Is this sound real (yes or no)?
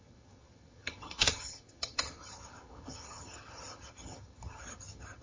no